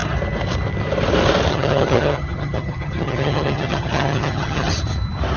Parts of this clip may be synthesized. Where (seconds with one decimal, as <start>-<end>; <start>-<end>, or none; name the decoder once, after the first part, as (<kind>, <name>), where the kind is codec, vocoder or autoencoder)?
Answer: 1.5-4.7 (vocoder, HiFi-GAN)